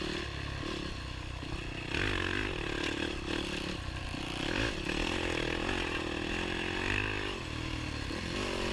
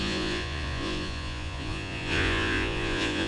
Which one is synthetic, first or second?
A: second